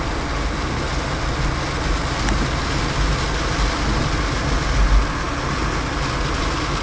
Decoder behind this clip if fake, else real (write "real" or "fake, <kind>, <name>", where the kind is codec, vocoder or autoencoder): real